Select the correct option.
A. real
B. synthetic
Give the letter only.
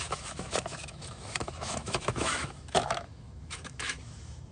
B